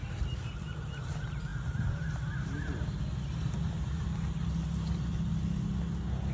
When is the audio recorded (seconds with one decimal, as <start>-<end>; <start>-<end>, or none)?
0.0-6.3